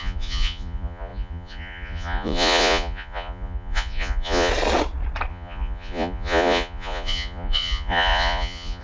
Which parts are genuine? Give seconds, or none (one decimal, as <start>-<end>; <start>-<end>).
4.5-5.3